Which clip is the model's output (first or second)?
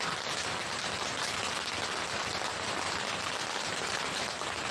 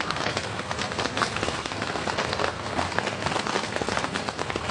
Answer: second